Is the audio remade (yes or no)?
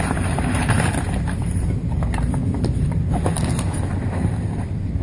yes